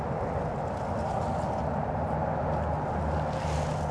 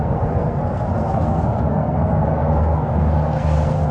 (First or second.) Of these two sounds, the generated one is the second